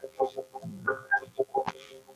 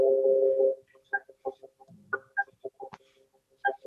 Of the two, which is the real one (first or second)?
second